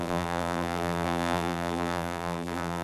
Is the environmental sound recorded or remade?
remade